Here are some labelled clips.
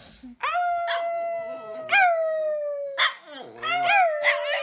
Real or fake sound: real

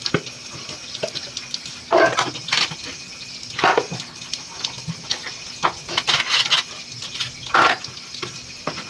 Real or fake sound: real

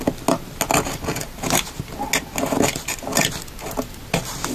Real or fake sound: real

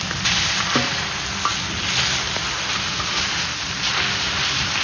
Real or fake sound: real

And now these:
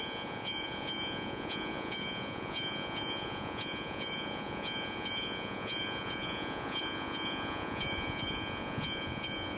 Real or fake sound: fake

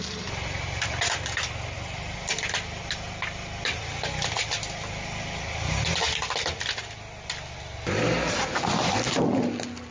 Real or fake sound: real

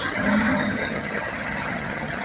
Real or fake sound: fake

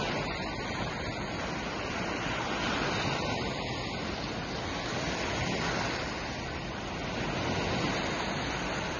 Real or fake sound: real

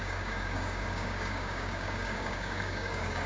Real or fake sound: fake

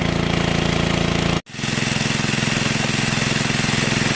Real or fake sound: real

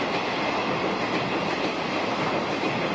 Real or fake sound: real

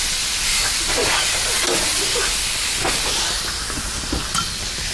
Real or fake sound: real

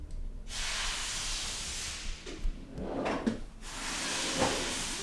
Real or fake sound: real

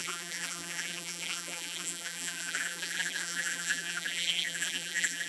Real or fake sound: fake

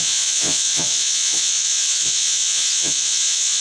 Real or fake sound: fake